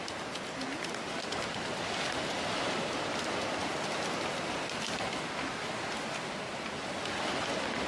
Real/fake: real